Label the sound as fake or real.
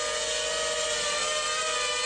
real